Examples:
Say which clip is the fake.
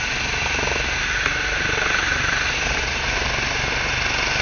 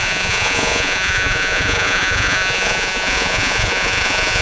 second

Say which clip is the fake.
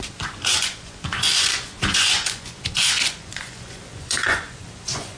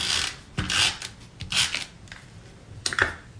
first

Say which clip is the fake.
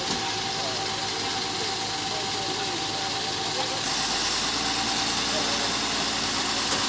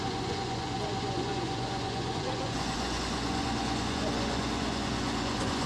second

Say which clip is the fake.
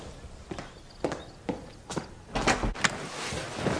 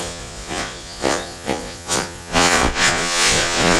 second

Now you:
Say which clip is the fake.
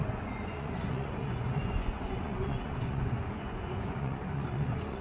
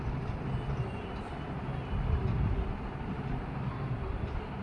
first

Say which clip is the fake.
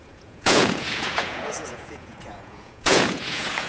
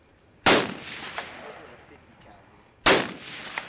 first